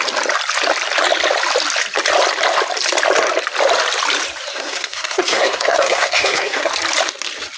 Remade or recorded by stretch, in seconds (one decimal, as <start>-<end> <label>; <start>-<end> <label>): 0.0-4.5 recorded; 4.5-6.7 remade; 6.7-7.6 recorded